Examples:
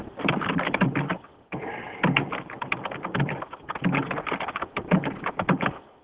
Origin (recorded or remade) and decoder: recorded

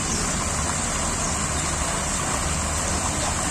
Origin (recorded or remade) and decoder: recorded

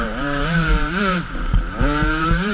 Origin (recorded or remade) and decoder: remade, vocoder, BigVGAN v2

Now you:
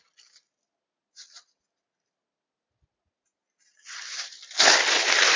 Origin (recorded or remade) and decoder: recorded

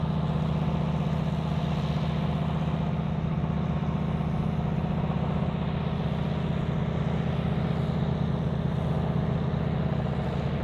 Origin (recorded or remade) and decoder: recorded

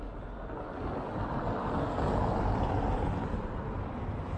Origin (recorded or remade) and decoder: recorded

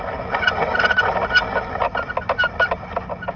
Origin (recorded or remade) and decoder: recorded